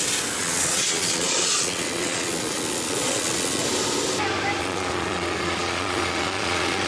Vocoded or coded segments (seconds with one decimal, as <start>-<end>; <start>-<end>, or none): 0.4-3.6; 4.6-6.9